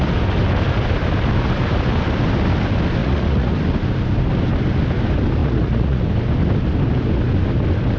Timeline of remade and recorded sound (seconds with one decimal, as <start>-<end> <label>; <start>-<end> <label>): 0.0-3.0 recorded; 3.0-3.5 remade; 3.5-5.4 recorded; 5.4-6.0 remade; 6.0-8.0 recorded